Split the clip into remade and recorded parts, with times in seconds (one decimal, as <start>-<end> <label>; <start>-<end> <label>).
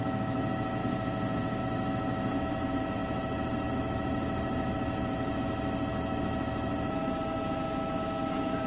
0.0-0.8 remade; 0.8-1.6 recorded; 1.6-8.7 remade